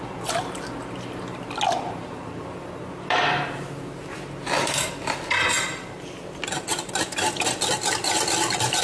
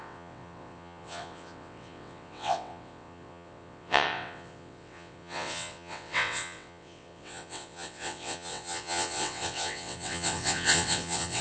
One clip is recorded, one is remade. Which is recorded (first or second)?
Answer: first